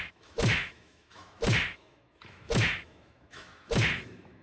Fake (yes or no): yes